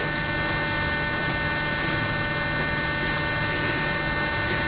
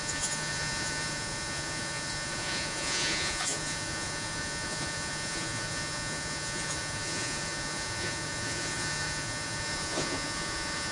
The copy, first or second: second